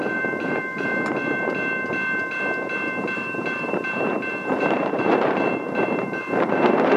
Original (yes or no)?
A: no